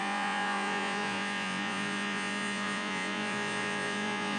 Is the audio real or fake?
fake